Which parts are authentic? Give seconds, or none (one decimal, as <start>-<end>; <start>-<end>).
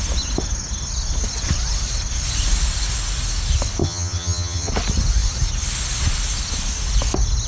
0.0-3.8; 4.7-7.5